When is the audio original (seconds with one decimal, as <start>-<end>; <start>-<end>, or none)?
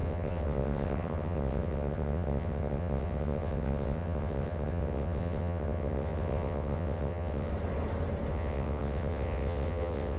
7.5-8.3